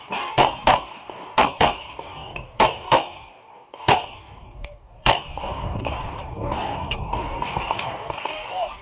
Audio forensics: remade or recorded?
remade